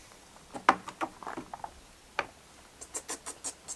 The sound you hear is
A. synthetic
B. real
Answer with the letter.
B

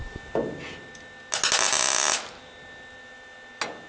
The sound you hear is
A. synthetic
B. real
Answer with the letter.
B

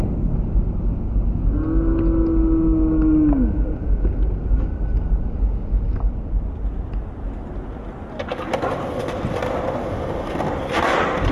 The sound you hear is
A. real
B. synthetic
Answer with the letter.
A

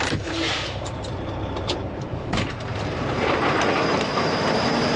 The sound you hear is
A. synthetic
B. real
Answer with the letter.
A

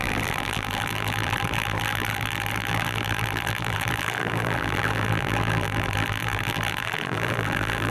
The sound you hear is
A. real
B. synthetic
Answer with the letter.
B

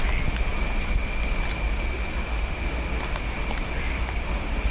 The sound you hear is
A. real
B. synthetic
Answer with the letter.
A